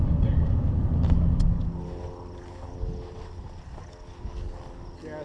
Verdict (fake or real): real